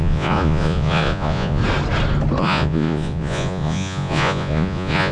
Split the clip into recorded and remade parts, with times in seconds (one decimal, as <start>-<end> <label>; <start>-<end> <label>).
0.0-1.6 remade; 1.6-2.4 recorded; 2.4-5.1 remade

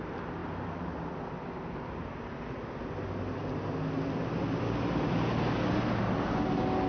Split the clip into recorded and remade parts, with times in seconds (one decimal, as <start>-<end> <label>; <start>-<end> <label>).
0.0-3.4 recorded; 3.4-5.1 remade; 5.1-6.9 recorded